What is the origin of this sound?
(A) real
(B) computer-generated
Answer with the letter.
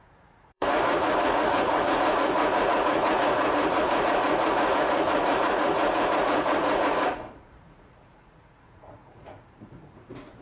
B